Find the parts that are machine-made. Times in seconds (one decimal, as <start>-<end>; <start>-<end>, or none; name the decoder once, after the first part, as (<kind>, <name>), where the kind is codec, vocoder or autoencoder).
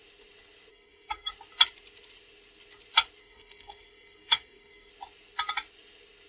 0.7-1.3 (codec, SNAC); 3.2-4.9